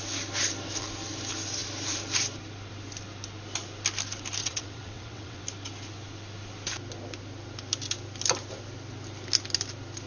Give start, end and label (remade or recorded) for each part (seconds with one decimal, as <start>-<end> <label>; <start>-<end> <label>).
0.0-4.4 recorded; 4.4-5.4 remade; 5.4-10.1 recorded